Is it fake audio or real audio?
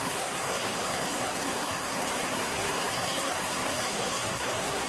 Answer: fake